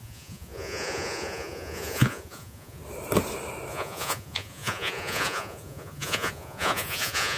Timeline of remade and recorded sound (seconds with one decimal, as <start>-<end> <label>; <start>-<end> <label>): 0.0-2.8 remade; 2.8-3.7 recorded; 3.7-7.4 remade